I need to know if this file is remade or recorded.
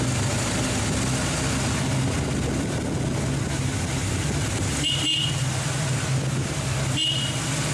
recorded